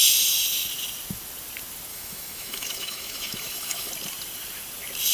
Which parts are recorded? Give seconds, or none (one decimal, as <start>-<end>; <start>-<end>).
0.0-1.9; 3.9-5.1